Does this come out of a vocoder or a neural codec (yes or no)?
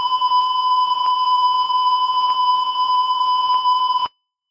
yes